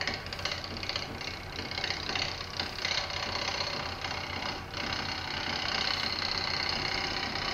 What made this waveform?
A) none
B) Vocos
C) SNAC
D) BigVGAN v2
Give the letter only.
A